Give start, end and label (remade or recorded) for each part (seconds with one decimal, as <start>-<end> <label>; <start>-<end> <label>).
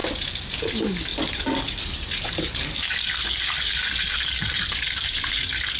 0.0-0.6 recorded; 0.6-5.8 remade